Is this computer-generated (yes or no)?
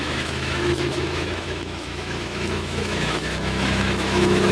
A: yes